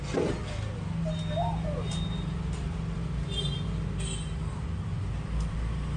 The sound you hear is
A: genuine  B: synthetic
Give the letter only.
A